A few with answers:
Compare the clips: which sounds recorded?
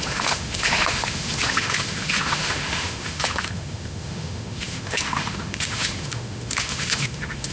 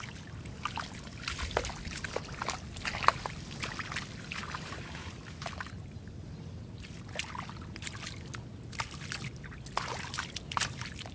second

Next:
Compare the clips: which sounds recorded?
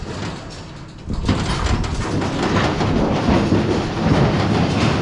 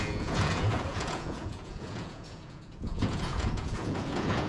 first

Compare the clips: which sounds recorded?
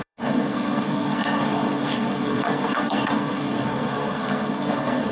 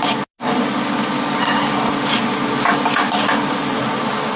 second